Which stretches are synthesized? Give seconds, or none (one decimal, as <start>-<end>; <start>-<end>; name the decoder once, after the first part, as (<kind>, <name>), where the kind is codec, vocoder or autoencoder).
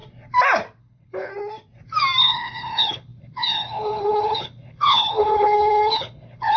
0.8-1.3 (codec, HILCodec); 2.2-6.6